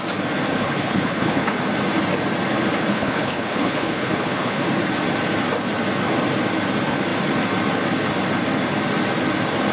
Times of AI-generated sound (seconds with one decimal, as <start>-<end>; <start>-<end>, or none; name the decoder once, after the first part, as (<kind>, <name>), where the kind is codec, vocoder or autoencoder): 0.5-1.6 (codec, HILCodec); 2.9-4.6